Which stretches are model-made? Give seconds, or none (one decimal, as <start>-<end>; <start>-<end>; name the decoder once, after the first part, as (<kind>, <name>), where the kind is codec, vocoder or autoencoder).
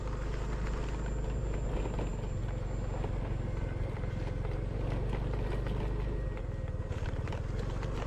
none